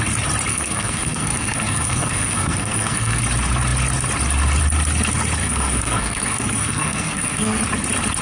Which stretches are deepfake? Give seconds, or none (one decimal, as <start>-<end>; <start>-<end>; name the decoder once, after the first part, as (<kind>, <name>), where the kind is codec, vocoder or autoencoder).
0.5-3.2 (codec, SNAC); 5.4-7.6